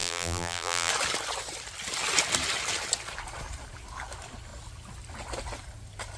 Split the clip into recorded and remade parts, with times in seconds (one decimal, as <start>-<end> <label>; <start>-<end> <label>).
0.0-0.9 remade; 0.9-6.2 recorded